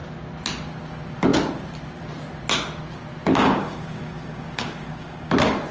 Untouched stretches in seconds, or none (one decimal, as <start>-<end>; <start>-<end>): 0.0-3.3; 5.3-5.7